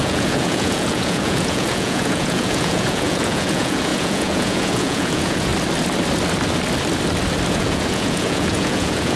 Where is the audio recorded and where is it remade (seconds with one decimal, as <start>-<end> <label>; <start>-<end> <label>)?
0.0-5.5 remade; 5.5-7.5 recorded; 7.5-9.2 remade